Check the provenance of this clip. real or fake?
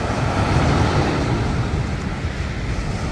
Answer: real